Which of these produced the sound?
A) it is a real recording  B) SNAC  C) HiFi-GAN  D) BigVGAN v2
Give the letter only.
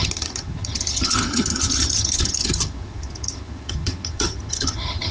C